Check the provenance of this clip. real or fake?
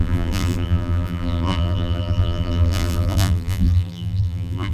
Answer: fake